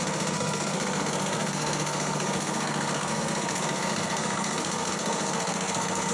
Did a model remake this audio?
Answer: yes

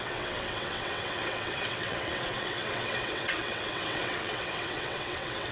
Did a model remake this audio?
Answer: yes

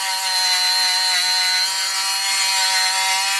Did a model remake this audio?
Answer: no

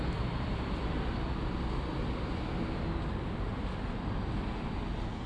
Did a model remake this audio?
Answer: no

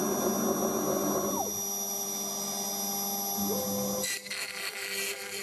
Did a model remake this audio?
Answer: no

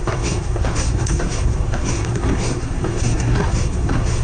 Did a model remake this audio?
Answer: yes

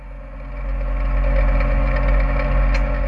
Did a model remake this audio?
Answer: no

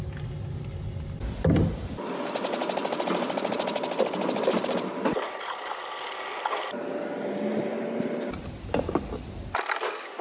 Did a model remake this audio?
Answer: no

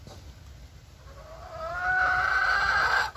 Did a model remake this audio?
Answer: no